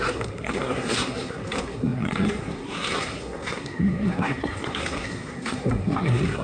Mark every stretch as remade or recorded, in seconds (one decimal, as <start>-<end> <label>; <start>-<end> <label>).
0.0-6.4 remade

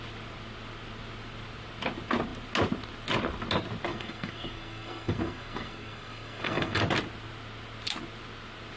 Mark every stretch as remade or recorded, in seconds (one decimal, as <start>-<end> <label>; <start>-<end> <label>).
0.0-3.9 recorded; 3.9-6.8 remade; 6.8-8.8 recorded

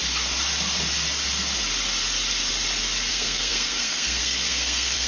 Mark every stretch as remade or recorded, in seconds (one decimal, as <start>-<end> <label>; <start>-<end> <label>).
0.0-3.1 recorded; 3.1-5.1 remade

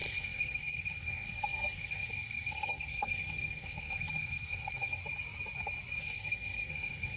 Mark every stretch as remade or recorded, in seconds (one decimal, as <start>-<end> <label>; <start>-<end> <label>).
0.0-5.0 remade; 5.0-6.0 recorded; 6.0-7.2 remade

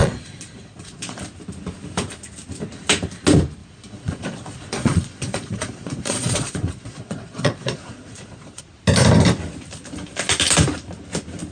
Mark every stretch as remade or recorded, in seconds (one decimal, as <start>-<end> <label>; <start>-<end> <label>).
0.0-1.2 remade; 1.2-3.6 recorded; 3.6-8.6 remade; 8.6-11.5 recorded

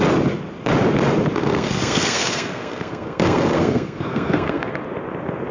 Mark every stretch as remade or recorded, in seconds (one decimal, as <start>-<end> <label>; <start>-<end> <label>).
0.0-1.4 recorded; 1.4-4.7 remade; 4.7-5.5 recorded

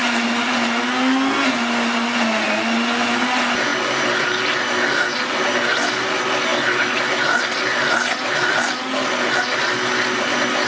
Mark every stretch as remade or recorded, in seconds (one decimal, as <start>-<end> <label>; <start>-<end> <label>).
0.0-10.7 recorded